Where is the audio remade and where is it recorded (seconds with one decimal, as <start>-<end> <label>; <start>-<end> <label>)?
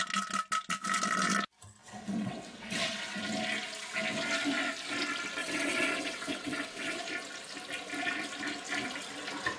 0.0-1.8 recorded; 1.8-3.2 remade; 3.2-5.4 recorded; 5.4-7.0 remade; 7.0-9.6 recorded